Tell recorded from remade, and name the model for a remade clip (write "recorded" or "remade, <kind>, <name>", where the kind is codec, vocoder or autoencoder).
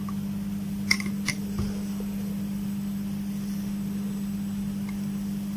remade, vocoder, BigVGAN v2